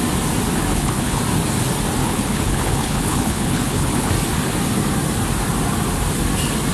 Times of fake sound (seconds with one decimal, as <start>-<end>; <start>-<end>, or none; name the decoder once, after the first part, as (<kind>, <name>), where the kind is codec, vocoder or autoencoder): 0.7-1.2 (codec, HILCodec); 2.0-4.1